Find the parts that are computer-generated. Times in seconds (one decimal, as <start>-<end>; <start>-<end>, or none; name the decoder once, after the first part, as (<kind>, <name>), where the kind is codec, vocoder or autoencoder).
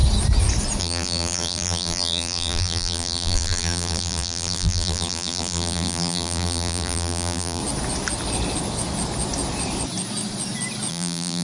0.8-7.6 (vocoder, BigVGAN v2); 10.9-11.4